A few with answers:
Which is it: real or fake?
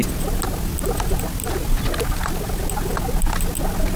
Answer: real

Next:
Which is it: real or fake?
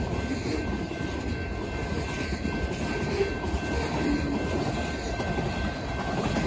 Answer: real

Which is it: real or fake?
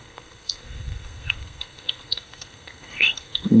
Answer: fake